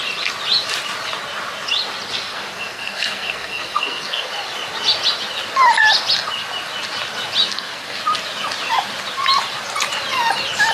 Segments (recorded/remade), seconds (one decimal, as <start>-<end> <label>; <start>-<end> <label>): 0.0-2.3 recorded; 2.3-4.3 remade; 4.3-7.5 recorded; 7.5-8.0 remade; 8.0-10.7 recorded